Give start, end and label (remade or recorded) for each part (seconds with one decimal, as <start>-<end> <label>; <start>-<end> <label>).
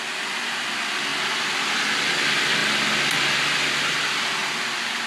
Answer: 0.0-5.1 recorded